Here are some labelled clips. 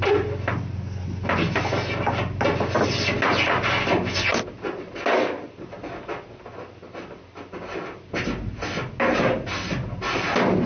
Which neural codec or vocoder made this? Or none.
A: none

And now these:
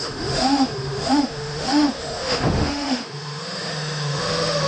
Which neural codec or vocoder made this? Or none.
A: autoencoder, DAC-VAE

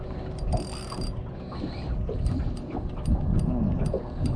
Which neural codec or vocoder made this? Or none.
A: none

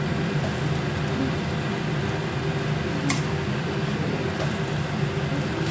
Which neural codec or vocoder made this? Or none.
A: none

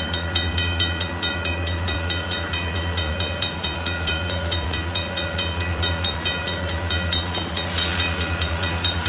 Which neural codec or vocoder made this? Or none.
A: vocoder, Vocos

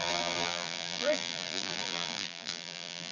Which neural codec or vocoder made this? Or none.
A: vocoder, BigVGAN v2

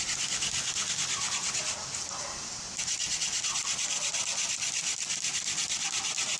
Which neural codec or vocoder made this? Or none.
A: none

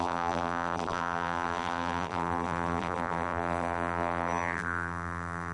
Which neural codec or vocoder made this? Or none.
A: vocoder, BigVGAN v2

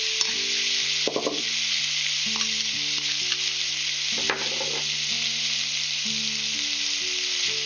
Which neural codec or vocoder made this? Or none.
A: none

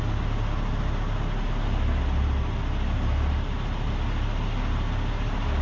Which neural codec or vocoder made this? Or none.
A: none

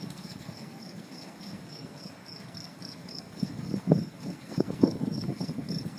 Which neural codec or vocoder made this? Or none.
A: codec, SNAC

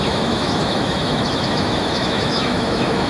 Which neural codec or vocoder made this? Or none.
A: autoencoder, DAC-VAE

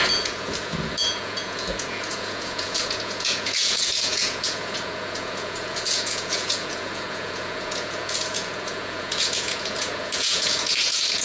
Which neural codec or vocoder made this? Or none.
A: vocoder, Vocos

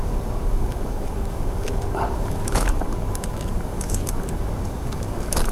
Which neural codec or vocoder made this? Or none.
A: codec, DAC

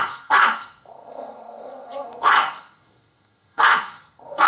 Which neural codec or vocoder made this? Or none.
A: codec, SNAC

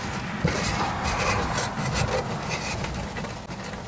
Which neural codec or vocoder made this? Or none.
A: none